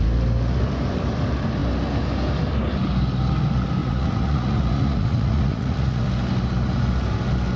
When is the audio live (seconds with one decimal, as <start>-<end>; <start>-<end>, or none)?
0.0-3.8; 6.0-7.6